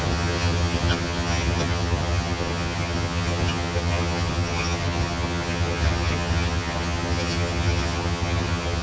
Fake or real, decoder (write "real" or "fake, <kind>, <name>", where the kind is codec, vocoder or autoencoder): fake, vocoder, HiFi-GAN